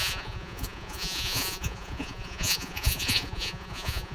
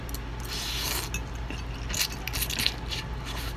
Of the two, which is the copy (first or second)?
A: first